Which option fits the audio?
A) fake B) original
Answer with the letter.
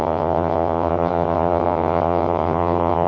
A